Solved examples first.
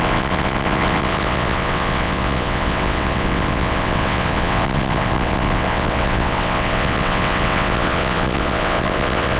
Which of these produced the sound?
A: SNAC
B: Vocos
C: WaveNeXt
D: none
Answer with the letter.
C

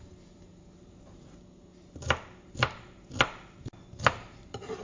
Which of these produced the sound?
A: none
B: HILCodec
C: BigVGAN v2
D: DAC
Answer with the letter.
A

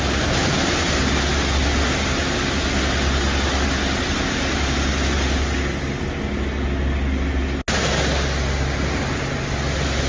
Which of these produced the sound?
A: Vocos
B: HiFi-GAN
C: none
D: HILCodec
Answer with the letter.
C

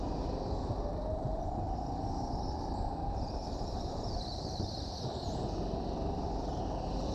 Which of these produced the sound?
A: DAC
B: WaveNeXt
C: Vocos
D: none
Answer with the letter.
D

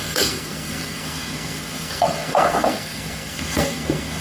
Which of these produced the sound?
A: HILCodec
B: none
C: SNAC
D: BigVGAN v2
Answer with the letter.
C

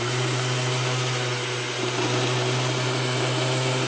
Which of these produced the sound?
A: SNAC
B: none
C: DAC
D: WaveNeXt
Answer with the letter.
B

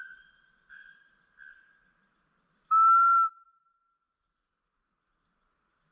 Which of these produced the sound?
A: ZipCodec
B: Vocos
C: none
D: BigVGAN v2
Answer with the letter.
C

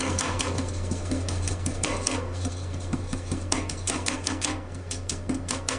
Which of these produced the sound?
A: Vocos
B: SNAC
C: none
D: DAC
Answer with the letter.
B